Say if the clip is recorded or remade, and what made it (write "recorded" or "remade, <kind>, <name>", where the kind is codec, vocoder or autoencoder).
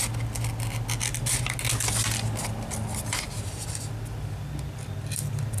recorded